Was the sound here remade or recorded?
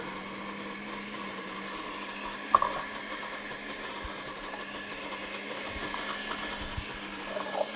recorded